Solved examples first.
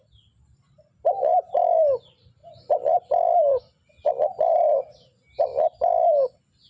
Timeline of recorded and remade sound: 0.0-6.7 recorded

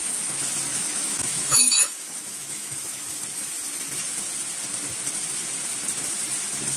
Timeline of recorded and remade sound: 0.0-0.7 recorded; 0.7-3.2 remade; 3.2-6.8 recorded

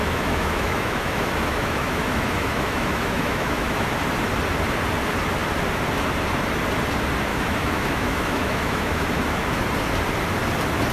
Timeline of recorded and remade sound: 0.0-4.0 remade; 4.0-7.3 recorded; 7.3-9.6 remade; 9.6-10.9 recorded

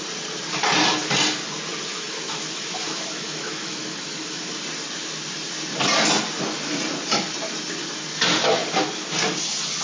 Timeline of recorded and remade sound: 0.0-1.9 recorded; 1.9-4.4 remade; 4.4-9.8 recorded